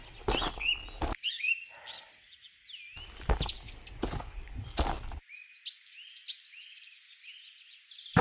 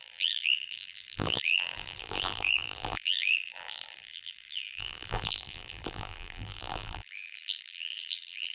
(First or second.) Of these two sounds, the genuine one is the first